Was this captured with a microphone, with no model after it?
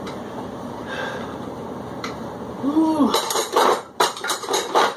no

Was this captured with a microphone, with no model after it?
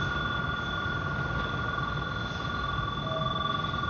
yes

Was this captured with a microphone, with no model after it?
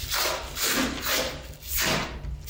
yes